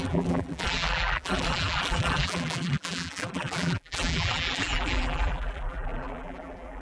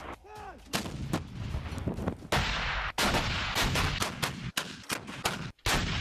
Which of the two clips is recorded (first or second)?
second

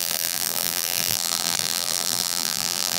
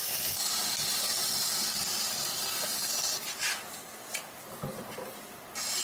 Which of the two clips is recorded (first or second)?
second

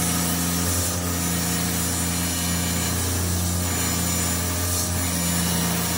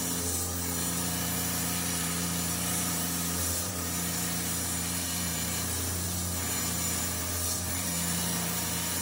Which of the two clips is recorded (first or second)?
first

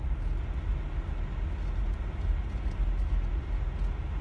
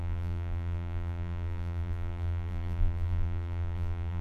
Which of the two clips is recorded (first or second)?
first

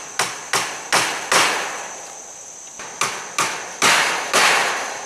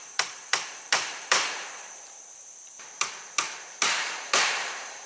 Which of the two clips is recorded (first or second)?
first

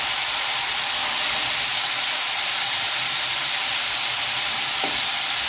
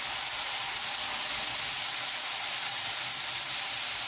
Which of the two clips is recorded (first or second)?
second